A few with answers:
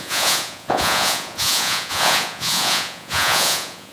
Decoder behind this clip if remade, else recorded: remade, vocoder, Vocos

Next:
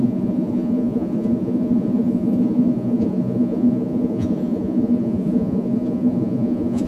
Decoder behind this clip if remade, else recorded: remade, vocoder, Vocos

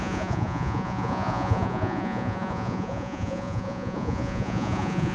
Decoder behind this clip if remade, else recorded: remade, vocoder, Vocos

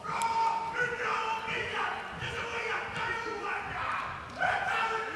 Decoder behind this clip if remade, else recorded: recorded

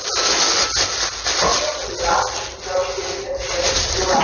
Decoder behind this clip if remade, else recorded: recorded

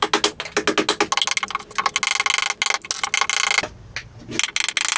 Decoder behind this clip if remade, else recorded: recorded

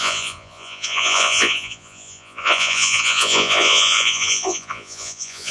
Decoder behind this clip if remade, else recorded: remade, vocoder, Vocos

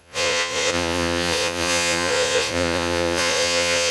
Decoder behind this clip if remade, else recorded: remade, vocoder, Vocos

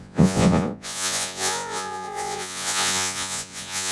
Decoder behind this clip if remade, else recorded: remade, vocoder, Vocos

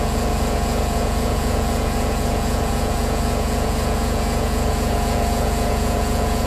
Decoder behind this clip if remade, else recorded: remade, vocoder, Vocos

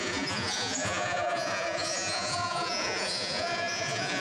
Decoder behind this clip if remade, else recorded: remade, vocoder, Vocos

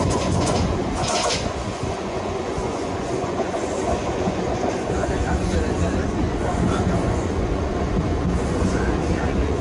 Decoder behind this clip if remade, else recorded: remade, vocoder, Vocos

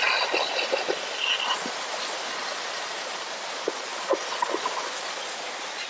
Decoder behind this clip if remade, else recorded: recorded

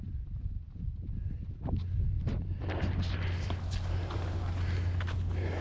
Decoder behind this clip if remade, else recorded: recorded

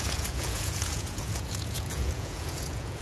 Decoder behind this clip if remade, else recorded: remade, vocoder, Vocos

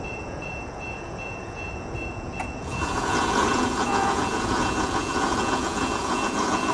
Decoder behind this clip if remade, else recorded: remade, vocoder, Vocos